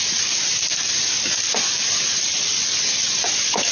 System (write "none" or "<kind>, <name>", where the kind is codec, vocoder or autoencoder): none